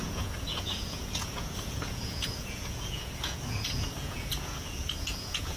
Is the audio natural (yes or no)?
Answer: no